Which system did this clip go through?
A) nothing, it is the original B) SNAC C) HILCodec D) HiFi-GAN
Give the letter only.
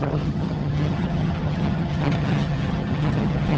D